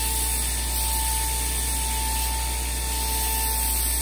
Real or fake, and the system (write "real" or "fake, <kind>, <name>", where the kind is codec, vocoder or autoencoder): real